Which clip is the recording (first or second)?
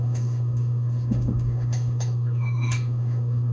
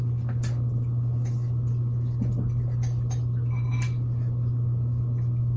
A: second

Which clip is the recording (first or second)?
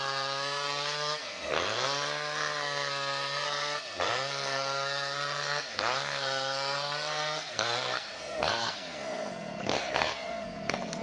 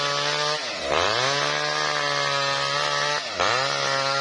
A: second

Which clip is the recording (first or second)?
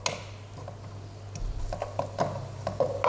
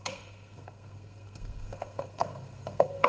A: first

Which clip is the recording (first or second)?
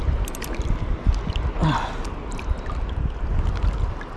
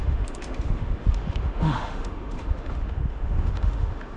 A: first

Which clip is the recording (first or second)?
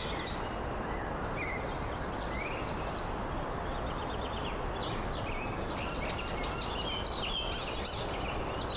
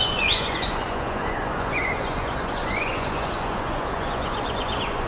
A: first